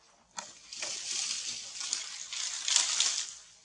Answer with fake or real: real